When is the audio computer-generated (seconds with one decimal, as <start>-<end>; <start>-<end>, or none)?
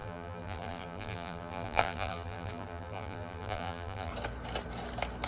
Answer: 0.0-4.1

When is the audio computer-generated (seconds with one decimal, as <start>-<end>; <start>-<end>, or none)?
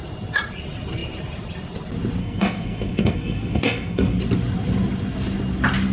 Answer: 2.2-4.2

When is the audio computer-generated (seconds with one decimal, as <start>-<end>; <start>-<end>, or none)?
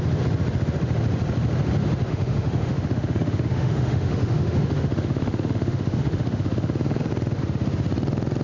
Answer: 2.1-7.1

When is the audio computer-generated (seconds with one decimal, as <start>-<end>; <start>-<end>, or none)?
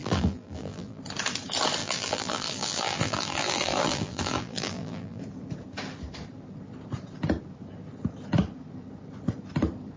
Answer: 0.0-1.0; 1.8-5.2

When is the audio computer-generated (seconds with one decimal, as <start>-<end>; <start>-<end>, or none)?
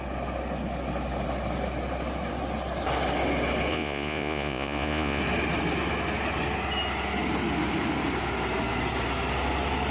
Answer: 3.7-5.2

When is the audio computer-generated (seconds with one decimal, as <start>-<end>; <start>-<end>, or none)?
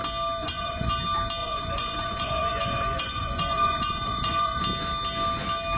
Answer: 0.4-0.9; 1.4-4.6